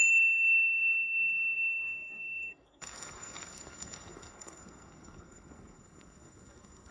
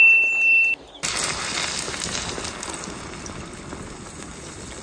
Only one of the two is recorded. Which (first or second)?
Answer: second